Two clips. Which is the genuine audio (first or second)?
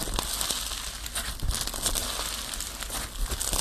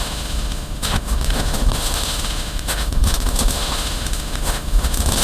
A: first